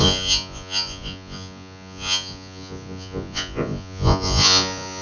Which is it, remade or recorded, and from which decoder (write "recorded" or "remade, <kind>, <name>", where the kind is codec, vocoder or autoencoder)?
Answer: remade, vocoder, Vocos